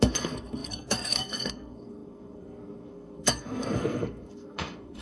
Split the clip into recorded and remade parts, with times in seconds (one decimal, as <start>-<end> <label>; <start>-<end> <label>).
0.0-5.0 remade